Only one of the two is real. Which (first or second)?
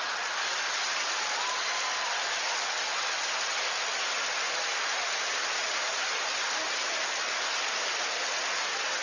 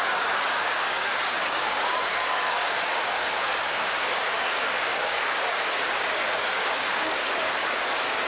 first